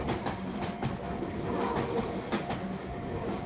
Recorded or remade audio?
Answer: remade